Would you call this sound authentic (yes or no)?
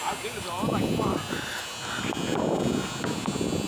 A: yes